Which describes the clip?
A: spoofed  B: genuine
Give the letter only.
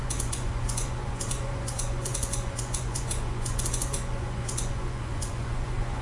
A